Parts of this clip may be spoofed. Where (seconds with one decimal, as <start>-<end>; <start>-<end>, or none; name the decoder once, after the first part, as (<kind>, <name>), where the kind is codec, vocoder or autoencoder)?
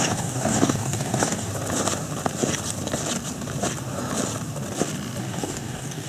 0.0-1.5 (codec, DAC); 5.2-6.1